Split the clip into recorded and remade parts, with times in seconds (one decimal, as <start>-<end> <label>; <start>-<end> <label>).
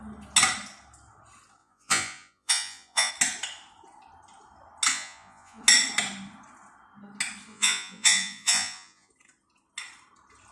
0.0-1.6 recorded; 1.6-3.1 remade; 3.1-4.9 recorded; 4.9-5.6 remade; 5.6-7.5 recorded; 7.5-9.1 remade; 9.1-10.5 recorded